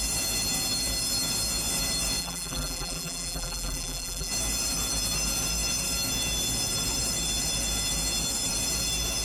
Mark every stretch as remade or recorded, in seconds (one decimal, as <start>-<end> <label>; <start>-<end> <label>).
0.0-2.2 recorded; 2.2-4.3 remade; 4.3-9.2 recorded